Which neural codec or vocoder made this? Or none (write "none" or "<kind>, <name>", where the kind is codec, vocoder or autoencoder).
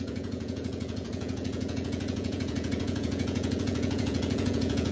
vocoder, Vocos